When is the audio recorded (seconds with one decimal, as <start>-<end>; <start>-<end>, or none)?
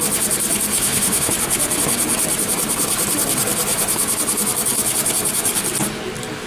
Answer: 0.0-0.7; 1.3-6.5